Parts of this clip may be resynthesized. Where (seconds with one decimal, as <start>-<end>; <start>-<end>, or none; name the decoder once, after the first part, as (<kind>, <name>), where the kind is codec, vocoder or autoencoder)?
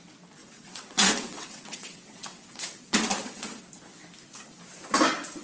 0.4-3.6 (vocoder, WaveNeXt)